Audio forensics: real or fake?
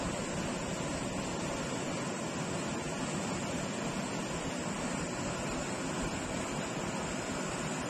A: real